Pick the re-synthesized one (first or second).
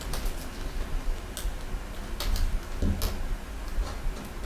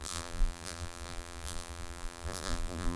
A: second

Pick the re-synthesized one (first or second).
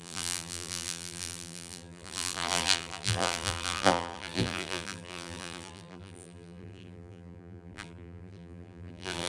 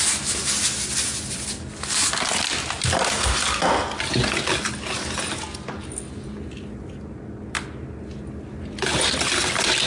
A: first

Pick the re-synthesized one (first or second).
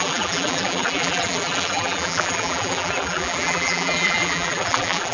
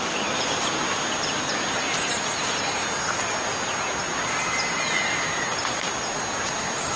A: first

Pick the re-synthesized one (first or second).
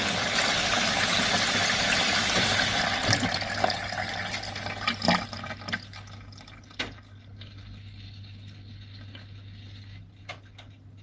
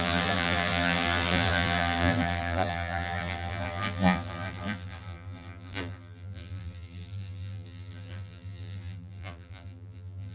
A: second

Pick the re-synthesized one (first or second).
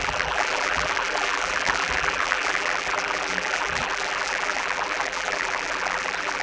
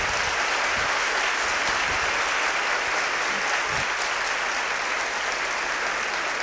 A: first